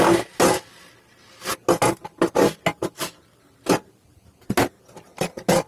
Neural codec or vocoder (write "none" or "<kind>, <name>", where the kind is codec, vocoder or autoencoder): none